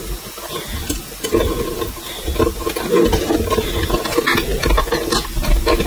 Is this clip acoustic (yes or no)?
yes